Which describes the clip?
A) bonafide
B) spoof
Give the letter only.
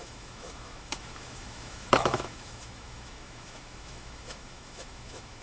B